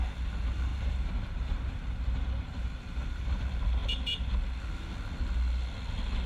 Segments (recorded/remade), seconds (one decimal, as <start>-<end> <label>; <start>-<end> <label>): 0.0-0.7 recorded; 0.7-3.4 remade; 3.4-6.3 recorded